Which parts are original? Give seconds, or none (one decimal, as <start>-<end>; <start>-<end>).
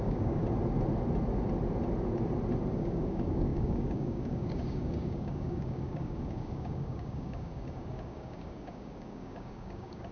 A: 0.4-2.7